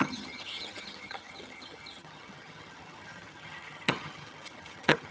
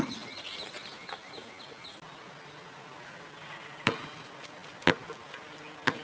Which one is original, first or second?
second